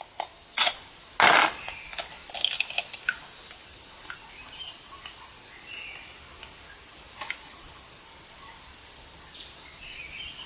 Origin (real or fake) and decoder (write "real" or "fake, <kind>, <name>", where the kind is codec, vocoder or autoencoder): real